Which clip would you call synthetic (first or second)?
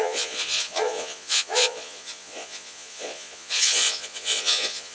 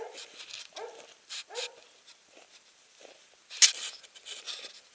first